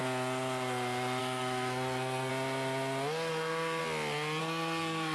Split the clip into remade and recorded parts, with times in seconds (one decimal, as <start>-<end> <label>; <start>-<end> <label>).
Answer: 0.0-1.2 recorded; 1.2-2.3 remade; 2.3-3.3 recorded; 3.3-3.8 remade; 3.8-4.4 recorded; 4.4-5.1 remade